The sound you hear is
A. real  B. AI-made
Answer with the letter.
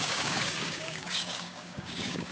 B